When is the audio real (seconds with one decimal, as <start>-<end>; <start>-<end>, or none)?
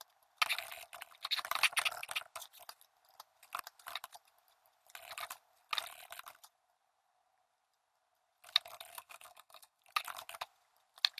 0.0-8.9; 9.8-11.2